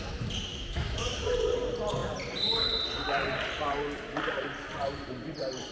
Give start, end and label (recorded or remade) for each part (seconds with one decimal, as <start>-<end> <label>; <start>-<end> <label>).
0.0-0.5 recorded; 0.5-1.2 remade; 1.2-5.7 recorded